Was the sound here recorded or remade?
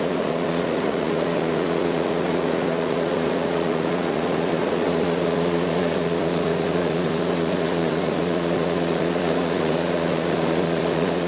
remade